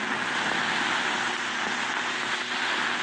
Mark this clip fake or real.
real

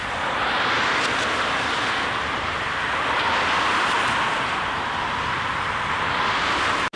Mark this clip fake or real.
real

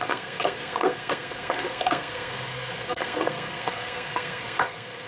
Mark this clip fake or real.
fake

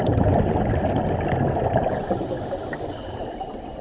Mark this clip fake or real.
real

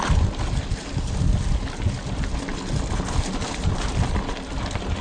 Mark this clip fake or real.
real